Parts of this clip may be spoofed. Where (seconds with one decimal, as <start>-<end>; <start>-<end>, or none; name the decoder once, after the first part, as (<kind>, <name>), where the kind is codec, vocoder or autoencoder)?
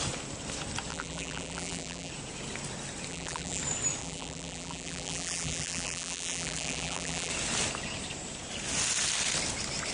0.9-2.1 (vocoder, BigVGAN v2); 3.1-3.6; 4.0-7.3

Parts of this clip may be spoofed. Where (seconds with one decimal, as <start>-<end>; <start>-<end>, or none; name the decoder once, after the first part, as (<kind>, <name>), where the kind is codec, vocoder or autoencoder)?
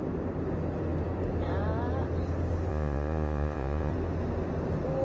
2.7-3.9 (vocoder, Vocos)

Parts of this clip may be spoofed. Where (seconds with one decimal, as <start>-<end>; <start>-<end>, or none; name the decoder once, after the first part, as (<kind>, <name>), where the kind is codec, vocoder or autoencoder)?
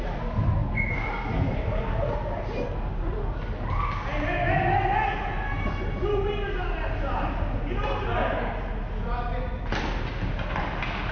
none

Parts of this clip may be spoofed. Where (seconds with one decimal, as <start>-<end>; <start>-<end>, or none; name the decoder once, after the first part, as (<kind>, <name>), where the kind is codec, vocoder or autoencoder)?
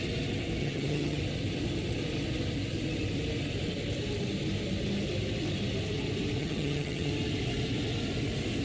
0.6-1.2 (vocoder, HiFi-GAN); 6.4-7.1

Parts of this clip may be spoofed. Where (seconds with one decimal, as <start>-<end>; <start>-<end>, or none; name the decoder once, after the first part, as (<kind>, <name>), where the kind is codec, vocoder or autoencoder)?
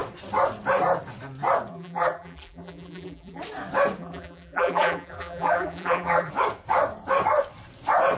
1.7-3.4 (vocoder, BigVGAN v2); 4.0-6.3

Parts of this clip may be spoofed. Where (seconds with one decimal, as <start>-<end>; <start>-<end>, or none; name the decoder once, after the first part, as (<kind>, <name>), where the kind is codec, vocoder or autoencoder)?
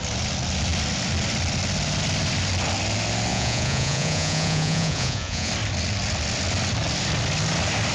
3.3-5.5 (vocoder, Vocos)